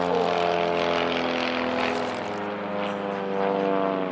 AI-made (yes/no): no